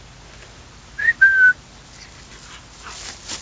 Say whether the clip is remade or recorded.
recorded